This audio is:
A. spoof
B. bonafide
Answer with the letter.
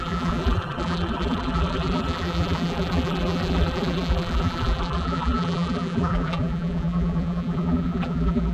A